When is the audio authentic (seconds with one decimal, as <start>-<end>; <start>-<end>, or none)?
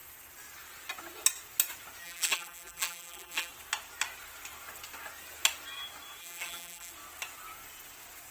0.0-2.0; 3.5-6.2; 6.9-8.3